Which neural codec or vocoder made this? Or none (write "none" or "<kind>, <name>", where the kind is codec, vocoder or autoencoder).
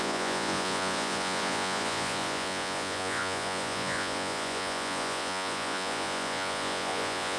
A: vocoder, Vocos